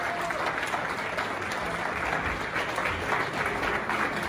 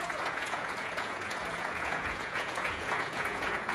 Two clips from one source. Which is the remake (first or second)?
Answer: second